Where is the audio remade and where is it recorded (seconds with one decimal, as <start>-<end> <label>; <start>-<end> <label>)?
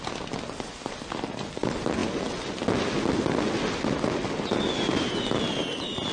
0.0-6.1 recorded